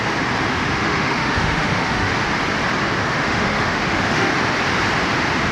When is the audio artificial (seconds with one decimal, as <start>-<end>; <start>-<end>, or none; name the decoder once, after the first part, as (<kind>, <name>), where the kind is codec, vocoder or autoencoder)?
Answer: 0.5-2.1 (autoencoder, DAC-VAE); 3.0-4.3